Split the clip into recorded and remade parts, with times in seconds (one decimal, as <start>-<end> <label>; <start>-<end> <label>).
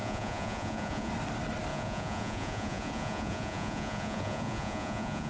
0.0-1.1 remade; 1.1-1.7 recorded; 1.7-5.3 remade